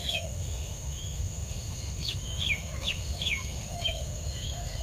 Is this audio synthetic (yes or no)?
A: yes